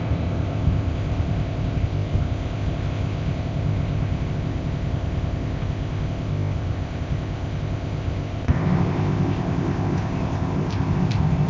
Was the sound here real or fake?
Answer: fake